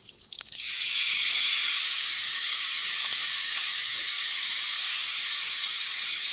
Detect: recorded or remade remade